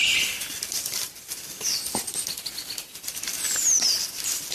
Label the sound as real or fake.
real